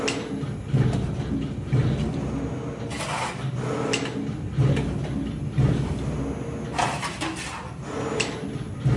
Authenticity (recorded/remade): recorded